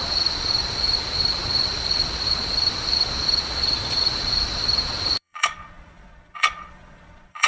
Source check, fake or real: fake